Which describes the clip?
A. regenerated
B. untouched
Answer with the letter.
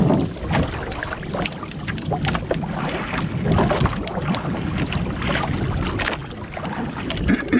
B